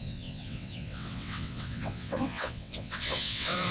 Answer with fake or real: fake